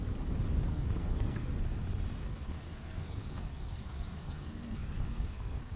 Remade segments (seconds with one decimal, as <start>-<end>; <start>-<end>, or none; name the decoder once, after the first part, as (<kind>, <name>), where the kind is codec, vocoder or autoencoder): 0.7-1.5 (codec, SNAC); 2.2-5.8